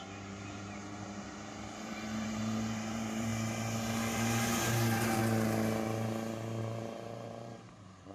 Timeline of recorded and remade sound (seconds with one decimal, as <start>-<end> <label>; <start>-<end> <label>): 0.0-0.8 remade; 0.8-1.8 recorded; 1.8-3.3 remade; 3.3-4.1 recorded; 4.1-5.2 remade; 5.2-6.6 recorded; 6.6-8.1 remade